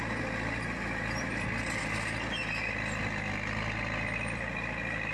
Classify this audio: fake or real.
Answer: real